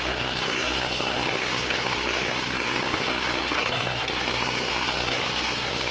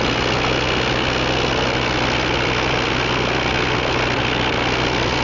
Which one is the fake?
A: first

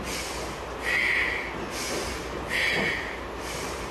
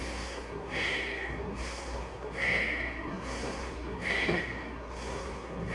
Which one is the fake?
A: second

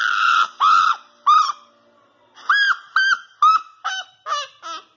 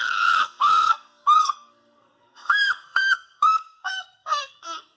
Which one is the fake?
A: second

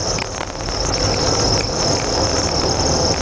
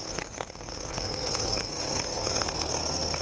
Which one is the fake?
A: second